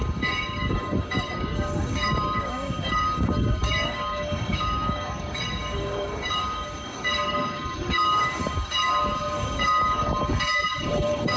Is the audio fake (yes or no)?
yes